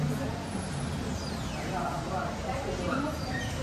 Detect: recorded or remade recorded